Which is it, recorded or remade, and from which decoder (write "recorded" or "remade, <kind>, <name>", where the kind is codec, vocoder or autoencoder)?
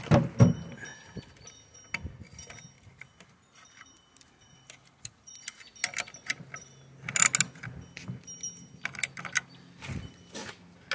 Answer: recorded